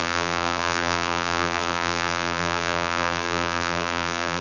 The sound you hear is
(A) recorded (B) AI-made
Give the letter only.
B